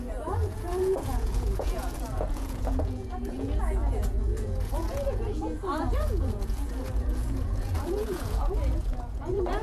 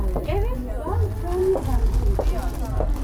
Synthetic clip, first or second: first